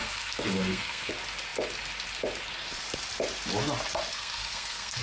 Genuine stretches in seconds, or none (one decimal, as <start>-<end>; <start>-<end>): 1.1-4.1